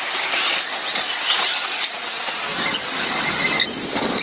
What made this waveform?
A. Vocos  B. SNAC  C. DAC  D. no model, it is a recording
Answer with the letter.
D